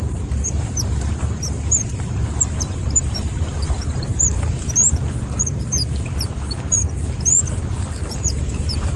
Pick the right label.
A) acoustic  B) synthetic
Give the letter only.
B